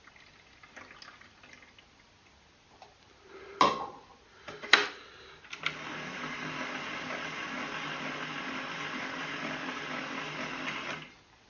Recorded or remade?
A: recorded